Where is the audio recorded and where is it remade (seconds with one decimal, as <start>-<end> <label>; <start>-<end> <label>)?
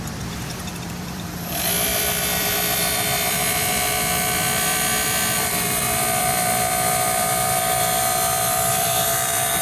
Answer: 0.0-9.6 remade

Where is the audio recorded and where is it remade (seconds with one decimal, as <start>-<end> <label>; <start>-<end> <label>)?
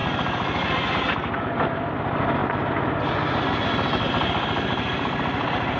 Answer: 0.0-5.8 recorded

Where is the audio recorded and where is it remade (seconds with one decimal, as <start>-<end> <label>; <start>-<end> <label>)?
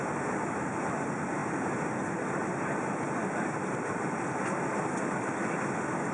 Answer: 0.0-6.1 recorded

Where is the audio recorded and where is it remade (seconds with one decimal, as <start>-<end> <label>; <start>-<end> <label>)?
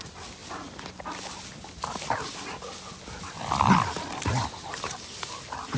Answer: 0.0-5.8 recorded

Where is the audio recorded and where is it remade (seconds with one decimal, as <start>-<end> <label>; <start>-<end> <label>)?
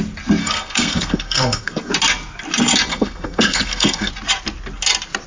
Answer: 0.0-0.4 recorded; 0.4-1.9 remade; 1.9-2.9 recorded; 2.9-4.1 remade; 4.1-5.3 recorded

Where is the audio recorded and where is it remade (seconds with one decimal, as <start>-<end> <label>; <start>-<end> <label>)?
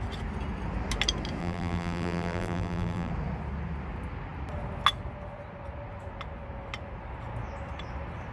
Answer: 0.0-1.4 recorded; 1.4-3.1 remade; 3.1-8.3 recorded